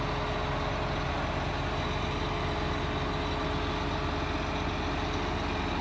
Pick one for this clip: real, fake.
real